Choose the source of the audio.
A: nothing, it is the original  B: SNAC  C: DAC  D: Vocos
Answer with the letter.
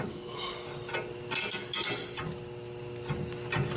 A